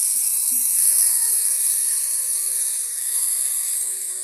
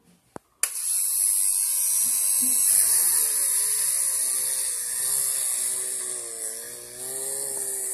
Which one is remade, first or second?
first